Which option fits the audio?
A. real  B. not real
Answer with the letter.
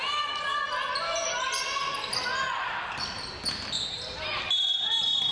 A